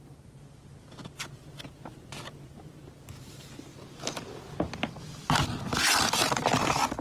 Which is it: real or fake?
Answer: real